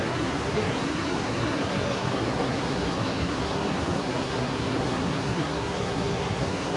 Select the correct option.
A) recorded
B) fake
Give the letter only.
B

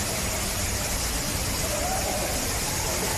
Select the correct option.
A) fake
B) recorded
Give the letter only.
B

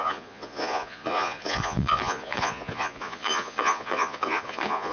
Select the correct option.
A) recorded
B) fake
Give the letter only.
B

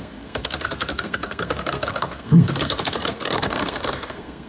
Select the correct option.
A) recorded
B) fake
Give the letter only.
B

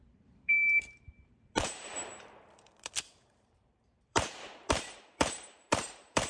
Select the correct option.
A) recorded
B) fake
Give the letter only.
B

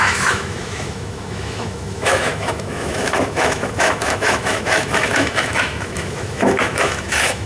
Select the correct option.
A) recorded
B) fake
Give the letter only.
B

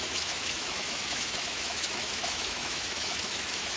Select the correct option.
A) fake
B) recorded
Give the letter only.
A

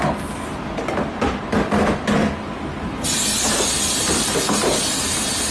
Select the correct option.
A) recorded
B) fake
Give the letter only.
A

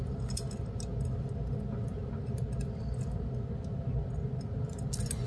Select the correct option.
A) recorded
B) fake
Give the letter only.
A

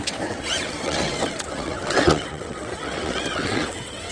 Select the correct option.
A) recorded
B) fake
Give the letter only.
B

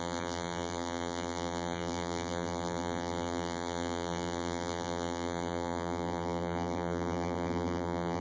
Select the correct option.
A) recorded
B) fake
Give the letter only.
B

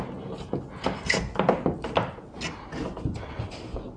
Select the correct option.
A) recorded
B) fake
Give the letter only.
A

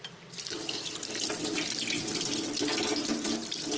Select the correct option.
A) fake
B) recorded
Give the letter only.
B